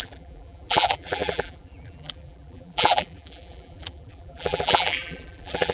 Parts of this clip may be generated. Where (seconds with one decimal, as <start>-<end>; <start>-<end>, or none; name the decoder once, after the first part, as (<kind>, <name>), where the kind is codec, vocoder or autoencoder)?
0.0-5.7 (vocoder, BigVGAN v2)